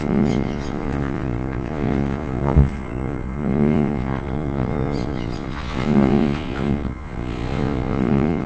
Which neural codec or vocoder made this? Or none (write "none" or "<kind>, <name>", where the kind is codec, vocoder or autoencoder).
vocoder, Vocos